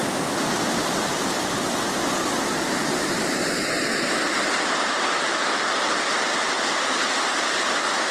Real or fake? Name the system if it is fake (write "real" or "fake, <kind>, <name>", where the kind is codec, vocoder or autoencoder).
real